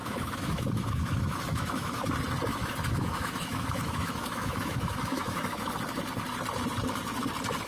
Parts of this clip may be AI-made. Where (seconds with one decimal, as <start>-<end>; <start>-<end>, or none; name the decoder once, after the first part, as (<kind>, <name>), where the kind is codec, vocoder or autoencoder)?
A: 0.0-2.1 (autoencoder, DAC-VAE); 2.5-5.7